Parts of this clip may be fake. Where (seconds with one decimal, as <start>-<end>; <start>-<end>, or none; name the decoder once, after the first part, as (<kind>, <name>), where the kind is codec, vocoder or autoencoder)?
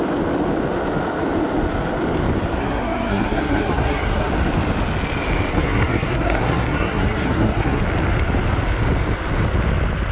2.6-4.3 (codec, SNAC); 5.5-7.8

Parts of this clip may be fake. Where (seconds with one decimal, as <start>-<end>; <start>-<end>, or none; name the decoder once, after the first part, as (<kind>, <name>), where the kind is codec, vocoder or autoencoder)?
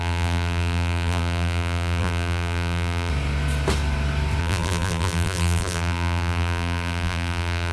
0.0-3.1 (vocoder, BigVGAN v2); 4.4-7.7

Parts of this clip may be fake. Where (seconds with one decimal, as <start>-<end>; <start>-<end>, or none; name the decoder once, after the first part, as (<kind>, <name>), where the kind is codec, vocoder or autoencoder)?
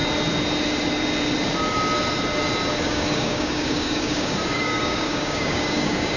2.8-6.2 (codec, DAC)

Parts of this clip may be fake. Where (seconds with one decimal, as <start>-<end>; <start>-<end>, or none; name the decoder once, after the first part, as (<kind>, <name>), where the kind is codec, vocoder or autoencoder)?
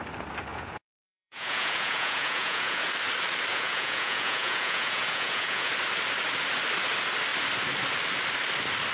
0.5-2.8 (vocoder, Vocos); 3.5-5.7